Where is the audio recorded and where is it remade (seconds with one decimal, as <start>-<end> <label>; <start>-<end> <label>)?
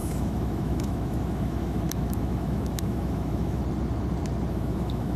0.0-3.6 remade; 3.6-4.5 recorded; 4.5-5.2 remade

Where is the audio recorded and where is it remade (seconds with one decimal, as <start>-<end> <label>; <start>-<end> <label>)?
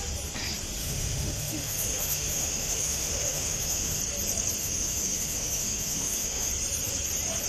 0.0-0.8 recorded; 0.8-4.0 remade; 4.0-4.6 recorded; 4.6-6.5 remade; 6.5-7.5 recorded